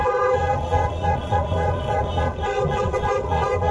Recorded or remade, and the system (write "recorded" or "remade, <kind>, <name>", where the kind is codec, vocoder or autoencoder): remade, vocoder, Vocos